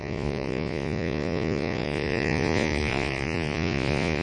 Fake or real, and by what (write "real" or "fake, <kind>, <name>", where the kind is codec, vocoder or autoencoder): fake, vocoder, Vocos